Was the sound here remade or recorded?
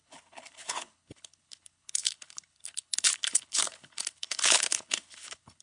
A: remade